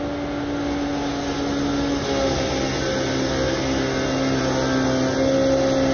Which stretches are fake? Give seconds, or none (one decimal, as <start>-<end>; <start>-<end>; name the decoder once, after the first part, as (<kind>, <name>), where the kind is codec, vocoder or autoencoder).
none